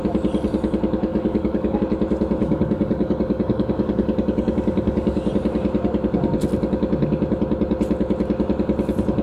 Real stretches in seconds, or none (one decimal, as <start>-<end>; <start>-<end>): 0.0-1.1; 1.8-2.4; 5.3-9.2